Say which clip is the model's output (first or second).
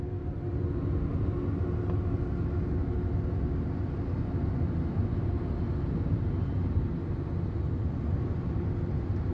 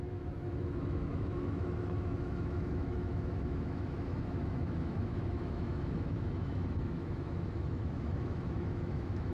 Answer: second